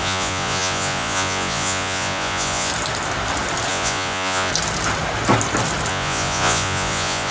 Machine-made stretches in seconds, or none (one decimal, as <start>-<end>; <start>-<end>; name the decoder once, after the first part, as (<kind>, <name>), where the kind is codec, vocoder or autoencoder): 0.0-2.7 (vocoder, Vocos); 3.7-4.5; 5.9-7.3